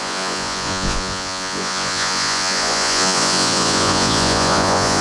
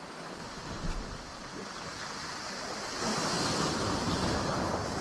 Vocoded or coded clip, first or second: first